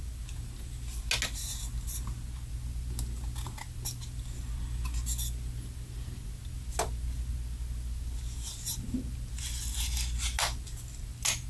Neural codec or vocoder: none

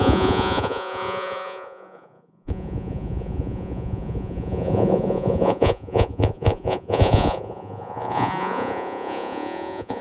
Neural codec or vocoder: vocoder, Vocos